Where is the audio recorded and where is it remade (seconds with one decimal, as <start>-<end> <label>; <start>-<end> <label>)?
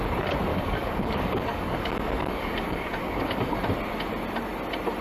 0.0-0.5 recorded; 0.5-3.5 remade; 3.5-5.0 recorded